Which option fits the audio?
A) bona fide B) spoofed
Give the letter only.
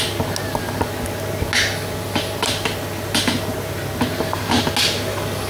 A